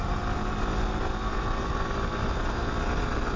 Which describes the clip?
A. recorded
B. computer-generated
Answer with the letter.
A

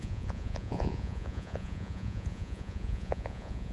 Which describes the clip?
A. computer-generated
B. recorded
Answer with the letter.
A